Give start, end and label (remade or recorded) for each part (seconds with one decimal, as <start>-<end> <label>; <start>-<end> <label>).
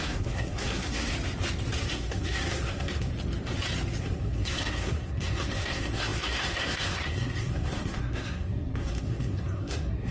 0.0-1.1 remade; 1.1-1.9 recorded; 1.9-3.1 remade; 3.1-4.0 recorded; 4.0-10.1 remade